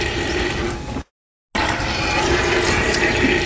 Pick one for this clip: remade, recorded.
recorded